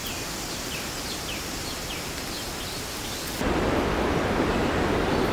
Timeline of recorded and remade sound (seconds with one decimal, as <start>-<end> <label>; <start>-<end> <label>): 0.0-5.3 recorded